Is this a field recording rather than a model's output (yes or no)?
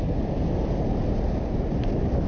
yes